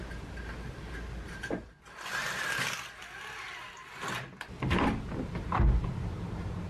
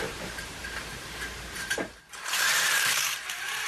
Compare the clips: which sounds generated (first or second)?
second